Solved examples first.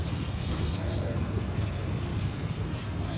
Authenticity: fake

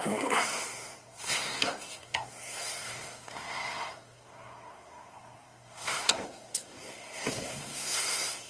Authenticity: fake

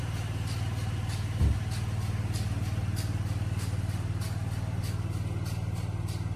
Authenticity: real